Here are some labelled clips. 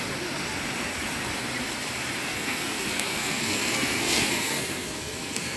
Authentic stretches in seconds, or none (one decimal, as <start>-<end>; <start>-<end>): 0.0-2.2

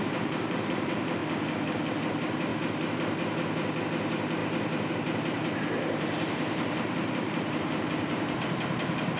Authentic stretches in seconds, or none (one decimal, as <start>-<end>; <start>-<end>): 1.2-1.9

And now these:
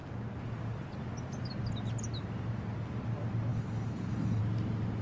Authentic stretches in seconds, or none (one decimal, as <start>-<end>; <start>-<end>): 0.0-3.5; 4.4-5.0

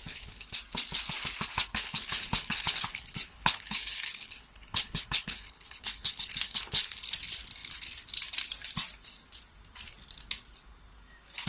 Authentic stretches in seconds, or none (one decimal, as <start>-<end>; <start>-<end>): 0.5-1.8; 7.0-11.5